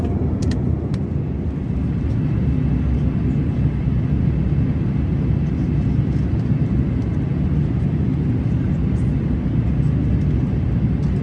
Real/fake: real